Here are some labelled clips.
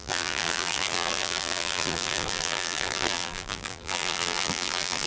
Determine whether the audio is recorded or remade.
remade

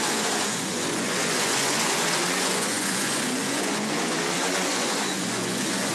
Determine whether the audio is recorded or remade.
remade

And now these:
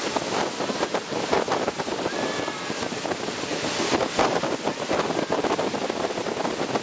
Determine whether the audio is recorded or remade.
recorded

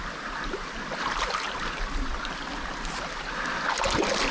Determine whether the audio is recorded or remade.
recorded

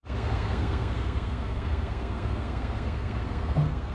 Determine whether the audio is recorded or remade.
remade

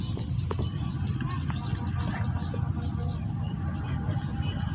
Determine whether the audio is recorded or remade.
recorded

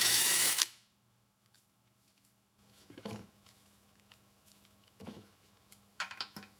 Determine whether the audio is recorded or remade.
remade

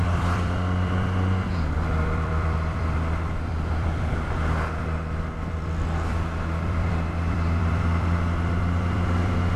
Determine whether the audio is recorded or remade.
remade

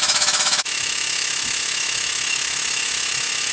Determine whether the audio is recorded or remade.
remade